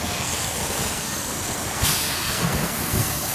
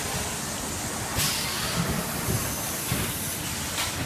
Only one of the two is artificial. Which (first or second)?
first